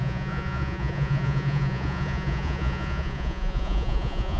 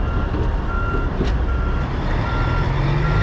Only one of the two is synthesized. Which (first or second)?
first